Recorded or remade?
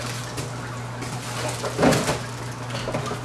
recorded